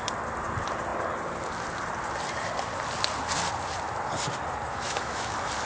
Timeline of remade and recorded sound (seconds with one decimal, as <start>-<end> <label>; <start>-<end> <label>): 0.0-4.7 recorded; 4.7-5.3 remade; 5.3-5.7 recorded